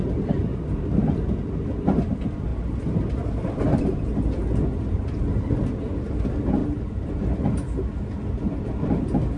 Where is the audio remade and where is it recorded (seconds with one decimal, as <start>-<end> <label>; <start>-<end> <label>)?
0.0-0.5 recorded; 0.5-1.5 remade; 1.5-2.5 recorded; 2.5-3.6 remade; 3.6-6.6 recorded; 6.6-7.2 remade; 7.2-9.4 recorded